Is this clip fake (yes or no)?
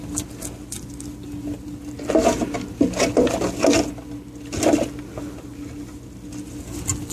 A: no